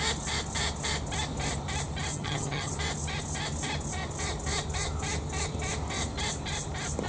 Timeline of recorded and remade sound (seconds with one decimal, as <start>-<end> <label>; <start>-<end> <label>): 0.0-2.1 recorded; 2.1-2.7 remade; 2.7-7.1 recorded